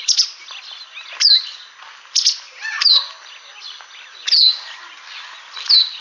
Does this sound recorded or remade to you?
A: recorded